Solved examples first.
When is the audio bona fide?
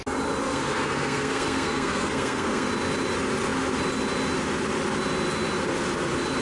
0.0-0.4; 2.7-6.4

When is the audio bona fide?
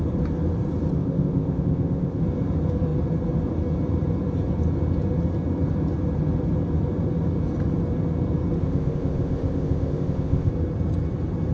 0.0-0.9; 2.2-8.6; 10.5-11.5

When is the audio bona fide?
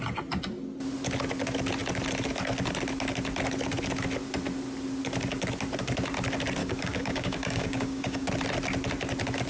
0.0-6.6; 8.3-9.5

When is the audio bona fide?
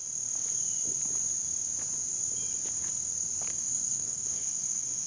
0.0-3.5